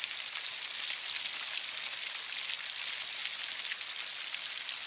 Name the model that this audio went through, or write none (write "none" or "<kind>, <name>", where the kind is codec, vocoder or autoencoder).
none